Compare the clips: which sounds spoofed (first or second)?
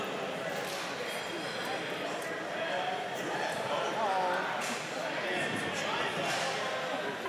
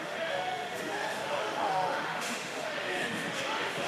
second